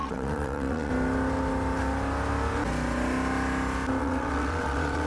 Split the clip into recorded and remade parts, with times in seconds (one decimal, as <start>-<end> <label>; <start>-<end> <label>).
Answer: 0.0-0.9 remade; 0.9-4.0 recorded; 4.0-5.1 remade